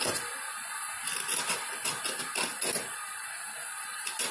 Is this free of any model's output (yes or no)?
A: yes